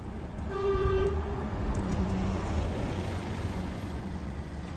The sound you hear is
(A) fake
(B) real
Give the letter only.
A